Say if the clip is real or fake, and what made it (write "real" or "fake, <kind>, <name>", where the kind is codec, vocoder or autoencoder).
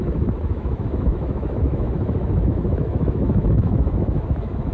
fake, autoencoder, DAC-VAE